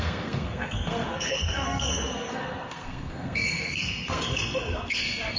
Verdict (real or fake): fake